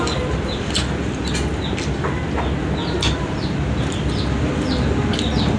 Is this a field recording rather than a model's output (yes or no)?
yes